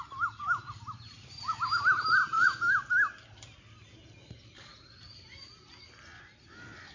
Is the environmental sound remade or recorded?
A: recorded